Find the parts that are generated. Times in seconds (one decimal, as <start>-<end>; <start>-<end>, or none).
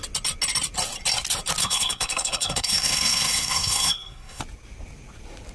1.6-4.4